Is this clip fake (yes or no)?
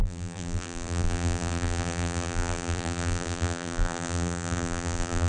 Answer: yes